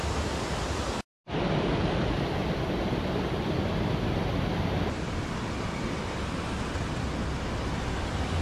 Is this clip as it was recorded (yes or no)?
yes